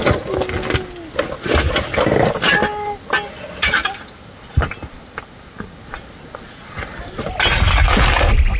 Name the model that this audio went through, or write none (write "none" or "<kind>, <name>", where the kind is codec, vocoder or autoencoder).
none